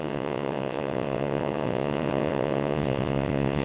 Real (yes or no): no